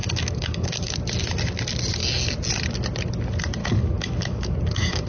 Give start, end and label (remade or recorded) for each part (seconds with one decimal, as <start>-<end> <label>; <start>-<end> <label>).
0.0-0.9 remade; 0.9-3.6 recorded; 3.6-5.1 remade